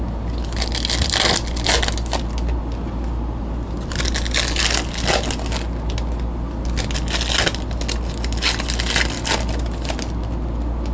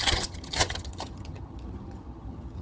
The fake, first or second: second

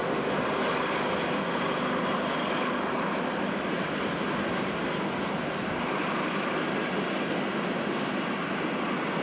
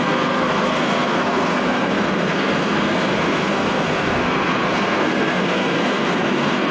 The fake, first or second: second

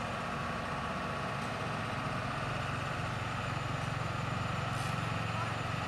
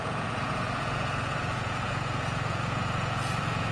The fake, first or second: second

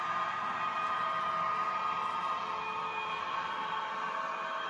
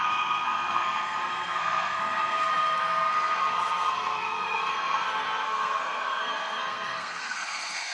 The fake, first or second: second